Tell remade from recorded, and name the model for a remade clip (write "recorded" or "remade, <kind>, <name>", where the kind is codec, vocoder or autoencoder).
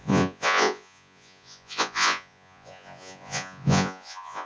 remade, vocoder, Vocos